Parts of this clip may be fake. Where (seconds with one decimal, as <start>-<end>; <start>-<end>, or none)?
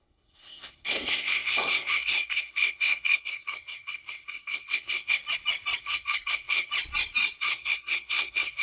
0.0-5.2; 5.8-6.7; 7.4-8.6